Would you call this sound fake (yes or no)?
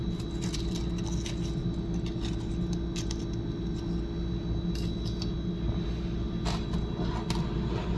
no